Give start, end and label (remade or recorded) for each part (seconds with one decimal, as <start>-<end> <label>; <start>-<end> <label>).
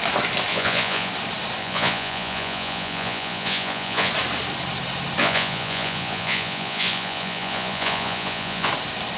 0.0-0.5 recorded; 0.5-1.1 remade; 1.1-1.6 recorded; 1.6-4.1 remade; 4.1-5.2 recorded; 5.2-8.7 remade; 8.7-9.2 recorded